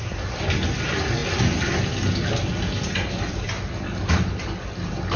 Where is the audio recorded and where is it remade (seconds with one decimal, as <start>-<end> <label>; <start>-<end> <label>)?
0.0-1.2 recorded; 1.2-4.3 remade; 4.3-5.2 recorded